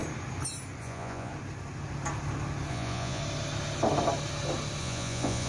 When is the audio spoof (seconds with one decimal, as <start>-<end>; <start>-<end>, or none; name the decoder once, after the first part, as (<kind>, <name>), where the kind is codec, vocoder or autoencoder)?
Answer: 0.8-1.3 (vocoder, Vocos); 2.7-3.2; 4.8-5.5

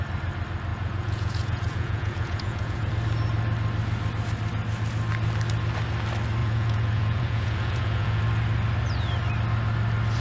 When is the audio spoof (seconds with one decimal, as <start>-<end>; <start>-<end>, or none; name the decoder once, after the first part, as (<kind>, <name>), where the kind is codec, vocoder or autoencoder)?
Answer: 0.7-2.9 (vocoder, Vocos); 6.4-8.2